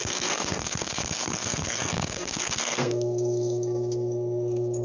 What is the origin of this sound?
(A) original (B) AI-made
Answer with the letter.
B